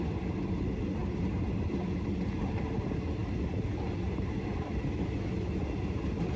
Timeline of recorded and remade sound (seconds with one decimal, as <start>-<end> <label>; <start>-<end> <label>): 0.0-6.4 recorded